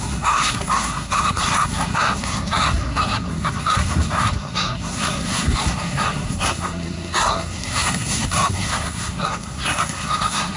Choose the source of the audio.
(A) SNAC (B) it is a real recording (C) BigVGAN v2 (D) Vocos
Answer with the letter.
A